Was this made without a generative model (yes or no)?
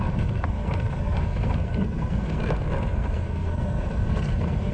no